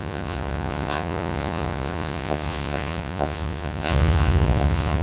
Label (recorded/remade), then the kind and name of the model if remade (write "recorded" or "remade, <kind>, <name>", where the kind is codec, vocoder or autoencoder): remade, vocoder, Vocos